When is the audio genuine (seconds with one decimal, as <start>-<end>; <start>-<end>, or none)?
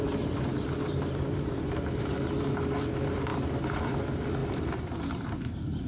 none